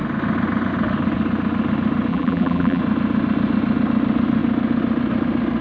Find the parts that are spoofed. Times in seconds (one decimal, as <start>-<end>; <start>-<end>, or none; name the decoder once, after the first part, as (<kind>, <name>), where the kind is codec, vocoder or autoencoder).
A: 2.1-2.8 (vocoder, BigVGAN v2)